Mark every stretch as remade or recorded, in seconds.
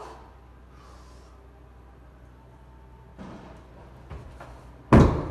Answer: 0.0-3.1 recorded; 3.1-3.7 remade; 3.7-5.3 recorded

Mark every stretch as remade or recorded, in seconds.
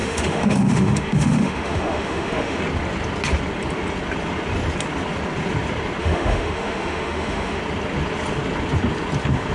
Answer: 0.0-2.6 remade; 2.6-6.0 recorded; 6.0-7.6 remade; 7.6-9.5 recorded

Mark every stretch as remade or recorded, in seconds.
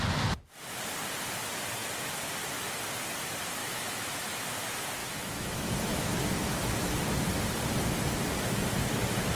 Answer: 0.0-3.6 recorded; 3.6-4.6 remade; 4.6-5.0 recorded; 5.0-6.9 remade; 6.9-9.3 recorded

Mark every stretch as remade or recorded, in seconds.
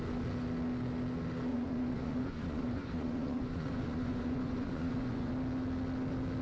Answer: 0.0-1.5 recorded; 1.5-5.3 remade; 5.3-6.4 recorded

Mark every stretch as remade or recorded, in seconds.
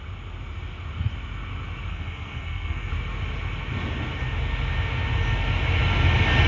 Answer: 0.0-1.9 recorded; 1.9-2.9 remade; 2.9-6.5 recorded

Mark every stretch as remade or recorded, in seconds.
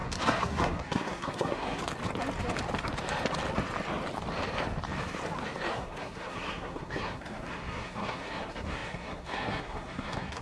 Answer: 0.0-1.8 remade; 1.8-5.7 recorded; 5.7-10.4 remade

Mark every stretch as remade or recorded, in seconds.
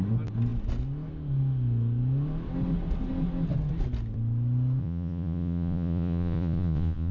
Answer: 0.0-4.8 recorded; 4.8-7.1 remade